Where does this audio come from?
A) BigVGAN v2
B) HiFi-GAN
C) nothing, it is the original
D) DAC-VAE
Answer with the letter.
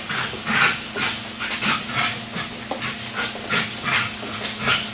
C